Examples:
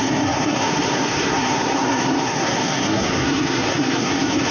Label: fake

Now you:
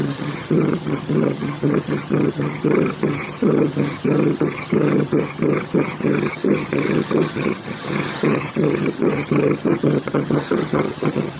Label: fake